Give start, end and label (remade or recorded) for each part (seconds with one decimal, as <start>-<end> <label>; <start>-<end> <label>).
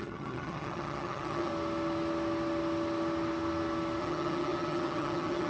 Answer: 0.0-1.5 remade; 1.5-4.0 recorded; 4.0-5.5 remade